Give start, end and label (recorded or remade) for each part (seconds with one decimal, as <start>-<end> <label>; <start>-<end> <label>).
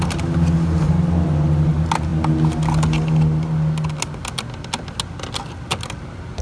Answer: 0.0-6.4 recorded